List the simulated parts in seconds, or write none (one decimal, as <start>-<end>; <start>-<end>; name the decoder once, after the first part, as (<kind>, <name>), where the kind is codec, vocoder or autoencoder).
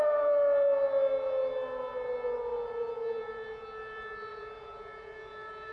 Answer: 4.3-5.7 (vocoder, Vocos)